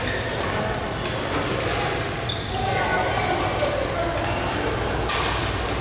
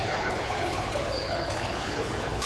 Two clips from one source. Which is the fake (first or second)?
second